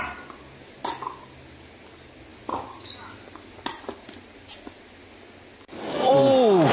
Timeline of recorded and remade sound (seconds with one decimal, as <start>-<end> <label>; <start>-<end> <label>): 0.0-6.7 recorded